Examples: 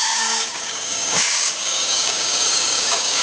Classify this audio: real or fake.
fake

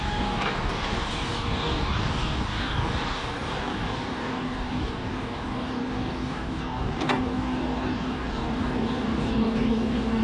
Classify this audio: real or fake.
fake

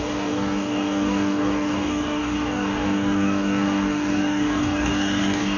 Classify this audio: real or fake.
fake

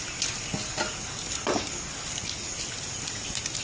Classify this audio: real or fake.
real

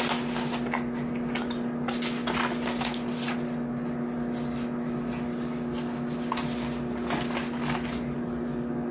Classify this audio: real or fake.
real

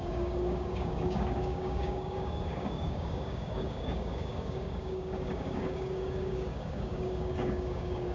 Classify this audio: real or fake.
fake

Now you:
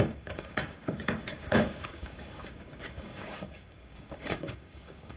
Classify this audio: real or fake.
fake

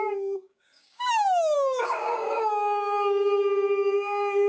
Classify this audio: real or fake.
fake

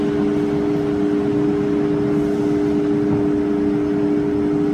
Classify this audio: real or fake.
real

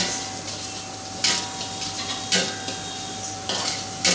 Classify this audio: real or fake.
real